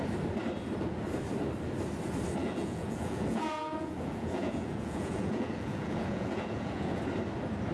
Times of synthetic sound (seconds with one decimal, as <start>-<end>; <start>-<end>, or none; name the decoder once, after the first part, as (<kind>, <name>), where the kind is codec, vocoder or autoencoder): 2.4-7.0 (vocoder, Vocos)